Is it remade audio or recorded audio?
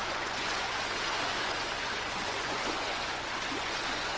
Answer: remade